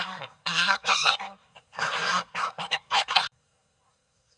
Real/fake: fake